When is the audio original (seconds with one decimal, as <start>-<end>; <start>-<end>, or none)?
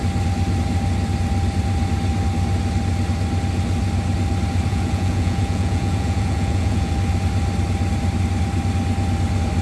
0.0-4.7; 6.9-9.6